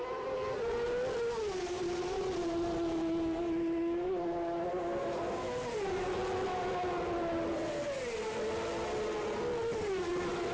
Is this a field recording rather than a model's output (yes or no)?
yes